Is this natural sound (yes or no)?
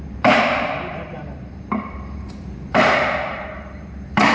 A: no